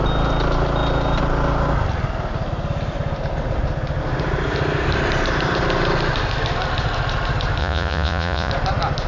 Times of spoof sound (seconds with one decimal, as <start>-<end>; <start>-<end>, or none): 7.6-8.5